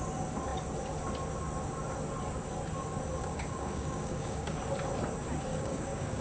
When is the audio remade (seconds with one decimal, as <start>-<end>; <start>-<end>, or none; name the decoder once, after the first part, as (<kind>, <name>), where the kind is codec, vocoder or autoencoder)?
3.2-4.6 (codec, DAC); 5.5-6.2